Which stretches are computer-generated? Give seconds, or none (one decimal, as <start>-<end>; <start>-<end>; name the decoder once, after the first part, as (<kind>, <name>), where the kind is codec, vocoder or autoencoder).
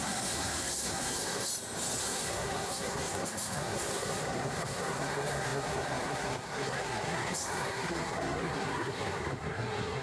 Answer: 0.0-1.5 (codec, SNAC); 2.0-10.0